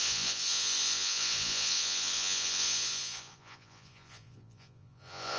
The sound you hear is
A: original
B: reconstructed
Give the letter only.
B